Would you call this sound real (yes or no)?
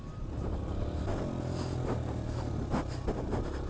yes